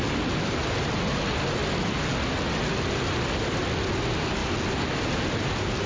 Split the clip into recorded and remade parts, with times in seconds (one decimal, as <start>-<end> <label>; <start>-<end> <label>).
0.0-5.9 recorded